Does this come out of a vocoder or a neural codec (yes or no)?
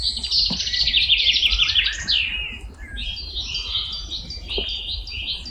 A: no